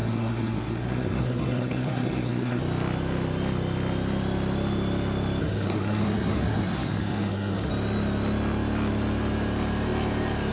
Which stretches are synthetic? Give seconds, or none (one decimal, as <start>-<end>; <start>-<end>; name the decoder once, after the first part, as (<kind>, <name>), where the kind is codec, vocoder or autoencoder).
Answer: 0.0-2.6 (codec, SNAC); 5.4-7.7